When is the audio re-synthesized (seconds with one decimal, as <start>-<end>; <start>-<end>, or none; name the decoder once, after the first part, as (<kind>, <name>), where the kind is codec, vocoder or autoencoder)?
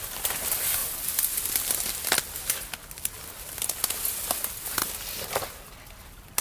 none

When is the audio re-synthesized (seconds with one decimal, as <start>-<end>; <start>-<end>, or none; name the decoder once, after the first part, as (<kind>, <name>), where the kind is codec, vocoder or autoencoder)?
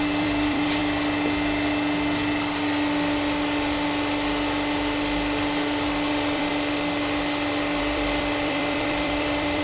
0.0-0.8 (vocoder, BigVGAN v2); 6.1-6.5; 7.8-9.6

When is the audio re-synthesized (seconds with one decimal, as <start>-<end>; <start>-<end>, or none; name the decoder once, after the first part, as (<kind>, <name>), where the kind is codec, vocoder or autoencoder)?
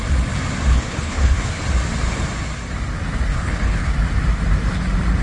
0.7-1.6 (codec, HILCodec); 3.3-3.9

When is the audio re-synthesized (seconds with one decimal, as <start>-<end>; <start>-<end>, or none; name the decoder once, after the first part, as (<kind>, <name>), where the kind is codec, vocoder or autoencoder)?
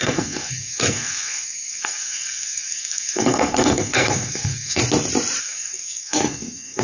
0.0-4.8 (codec, SNAC); 5.4-6.8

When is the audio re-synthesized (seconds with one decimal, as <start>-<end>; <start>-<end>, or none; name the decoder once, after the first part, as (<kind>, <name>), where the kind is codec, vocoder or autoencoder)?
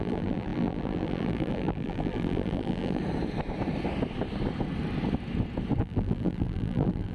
0.0-3.0 (vocoder, BigVGAN v2); 5.8-7.1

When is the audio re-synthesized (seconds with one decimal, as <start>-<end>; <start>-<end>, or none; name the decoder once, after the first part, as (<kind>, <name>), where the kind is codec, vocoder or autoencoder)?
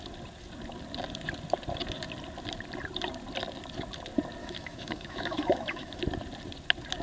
4.4-6.0 (autoencoder, DAC-VAE)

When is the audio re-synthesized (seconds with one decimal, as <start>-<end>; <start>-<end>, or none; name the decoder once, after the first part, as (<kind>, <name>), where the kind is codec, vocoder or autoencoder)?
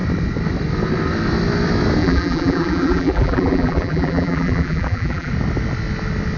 2.0-5.3 (vocoder, BigVGAN v2)